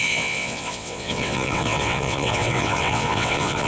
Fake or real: fake